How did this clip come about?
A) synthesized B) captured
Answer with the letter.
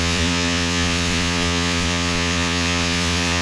A